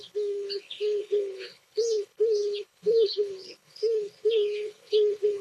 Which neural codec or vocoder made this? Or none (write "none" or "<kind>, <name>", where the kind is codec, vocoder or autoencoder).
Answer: codec, HILCodec